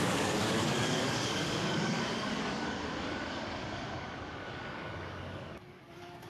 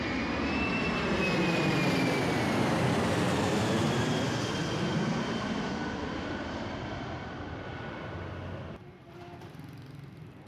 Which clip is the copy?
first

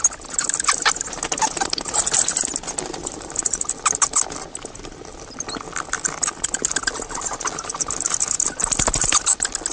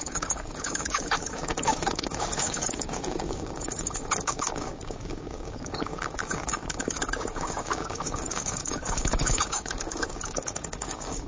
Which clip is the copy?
second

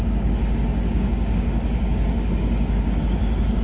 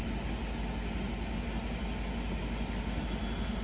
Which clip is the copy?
first